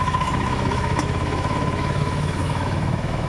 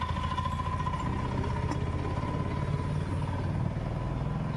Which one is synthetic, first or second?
first